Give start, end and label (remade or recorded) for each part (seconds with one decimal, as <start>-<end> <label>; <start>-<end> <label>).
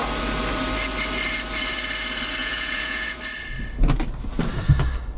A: 0.0-2.4 recorded; 2.4-3.2 remade; 3.2-5.2 recorded